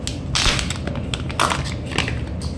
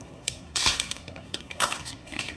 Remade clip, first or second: second